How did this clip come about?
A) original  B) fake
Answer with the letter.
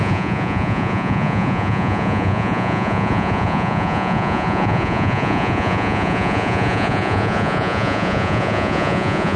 B